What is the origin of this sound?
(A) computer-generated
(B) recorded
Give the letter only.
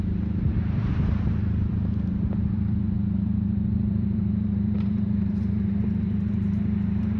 A